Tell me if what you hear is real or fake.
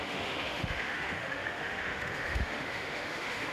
fake